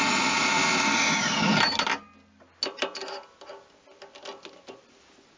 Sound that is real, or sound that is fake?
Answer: real